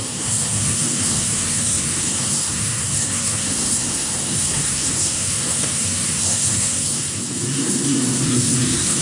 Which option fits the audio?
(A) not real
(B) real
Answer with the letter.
A